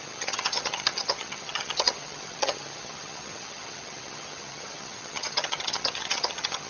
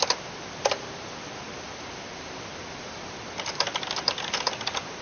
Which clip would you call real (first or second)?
second